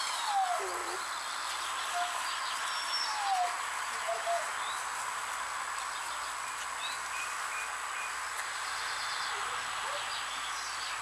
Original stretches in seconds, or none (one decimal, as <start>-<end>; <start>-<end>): 0.0-0.8; 1.5-11.0